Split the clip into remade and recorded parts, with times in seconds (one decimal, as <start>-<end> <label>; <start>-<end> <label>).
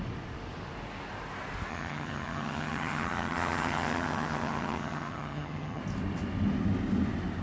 0.0-1.7 recorded; 1.7-5.8 remade; 5.8-7.4 recorded